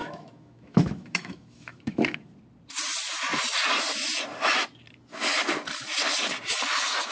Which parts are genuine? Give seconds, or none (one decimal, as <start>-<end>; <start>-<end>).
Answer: 2.3-7.1